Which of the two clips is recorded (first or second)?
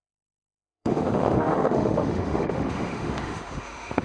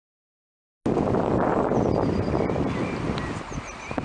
second